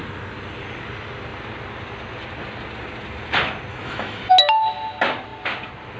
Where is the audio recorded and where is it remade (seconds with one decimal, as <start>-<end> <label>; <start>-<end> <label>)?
0.0-3.7 recorded; 3.7-4.2 remade; 4.2-6.0 recorded